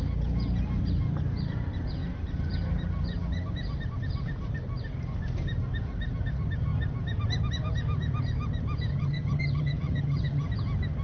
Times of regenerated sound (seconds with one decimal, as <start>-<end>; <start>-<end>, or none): 8.9-10.5